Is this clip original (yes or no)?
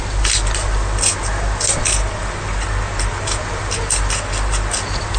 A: yes